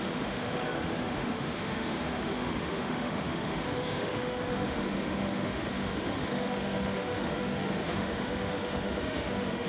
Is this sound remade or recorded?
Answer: remade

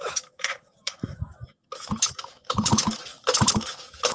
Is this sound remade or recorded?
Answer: remade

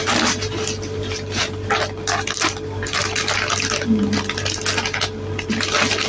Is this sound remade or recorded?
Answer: recorded